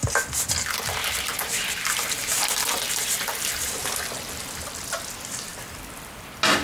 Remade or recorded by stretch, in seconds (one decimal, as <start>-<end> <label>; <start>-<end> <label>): 0.0-6.6 recorded